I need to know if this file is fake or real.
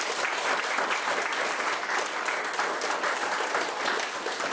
real